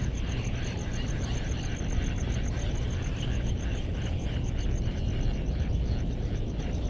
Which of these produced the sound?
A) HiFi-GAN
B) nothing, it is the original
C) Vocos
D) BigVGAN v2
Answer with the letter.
B